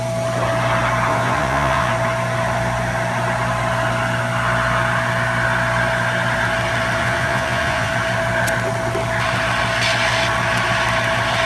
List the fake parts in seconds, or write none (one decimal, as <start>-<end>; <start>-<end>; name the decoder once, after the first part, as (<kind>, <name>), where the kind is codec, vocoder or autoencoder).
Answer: 1.1-1.9 (vocoder, Vocos); 7.0-7.9